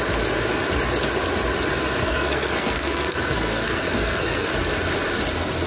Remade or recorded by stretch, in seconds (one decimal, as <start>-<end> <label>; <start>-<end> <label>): 0.0-2.0 recorded; 2.0-4.5 remade; 4.5-5.7 recorded